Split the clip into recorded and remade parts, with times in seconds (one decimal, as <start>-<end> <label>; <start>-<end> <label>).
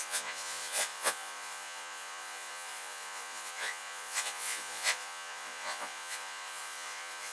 0.0-7.3 remade